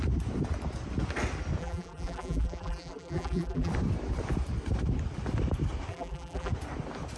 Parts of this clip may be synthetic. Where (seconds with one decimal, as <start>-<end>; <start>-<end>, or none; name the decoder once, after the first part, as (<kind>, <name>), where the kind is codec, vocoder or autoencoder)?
1.6-3.7 (vocoder, BigVGAN v2); 5.9-6.5